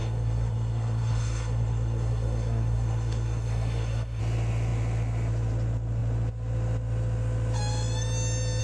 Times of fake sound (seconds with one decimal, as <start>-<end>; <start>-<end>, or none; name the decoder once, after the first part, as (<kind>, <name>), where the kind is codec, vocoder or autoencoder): 0.0-4.2 (codec, SNAC)